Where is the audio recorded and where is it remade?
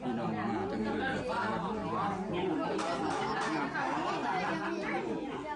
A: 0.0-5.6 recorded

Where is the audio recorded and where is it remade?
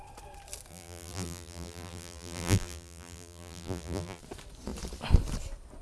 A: 0.0-0.7 recorded; 0.7-4.2 remade; 4.2-5.8 recorded